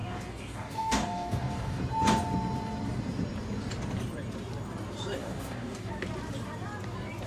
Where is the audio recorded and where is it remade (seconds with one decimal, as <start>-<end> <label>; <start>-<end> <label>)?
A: 0.0-1.8 remade; 1.8-5.2 recorded; 5.2-5.9 remade; 5.9-7.3 recorded